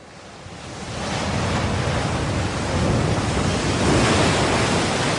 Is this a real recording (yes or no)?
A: yes